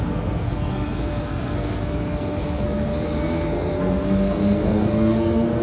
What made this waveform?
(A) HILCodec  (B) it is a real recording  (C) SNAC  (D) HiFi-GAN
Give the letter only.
C